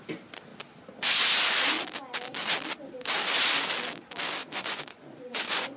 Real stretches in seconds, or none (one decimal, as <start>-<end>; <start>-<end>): 0.0-4.4